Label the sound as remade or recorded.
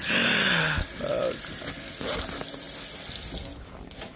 recorded